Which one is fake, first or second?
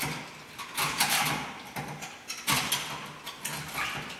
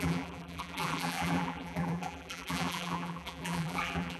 second